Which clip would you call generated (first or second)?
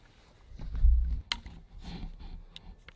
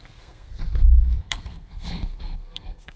second